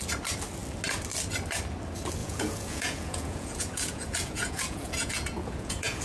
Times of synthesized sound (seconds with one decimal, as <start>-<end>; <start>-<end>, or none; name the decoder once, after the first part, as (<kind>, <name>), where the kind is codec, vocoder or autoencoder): 2.2-6.0 (vocoder, Vocos)